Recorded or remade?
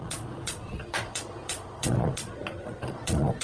remade